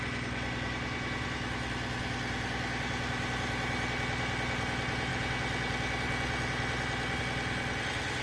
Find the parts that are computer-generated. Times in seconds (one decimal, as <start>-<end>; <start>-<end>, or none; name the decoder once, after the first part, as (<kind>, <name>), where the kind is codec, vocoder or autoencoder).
none